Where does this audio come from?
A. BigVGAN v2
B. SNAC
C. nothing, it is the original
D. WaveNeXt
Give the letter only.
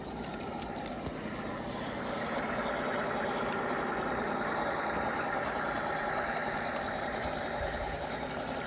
C